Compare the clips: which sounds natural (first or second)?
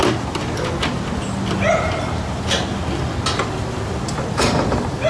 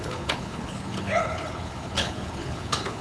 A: first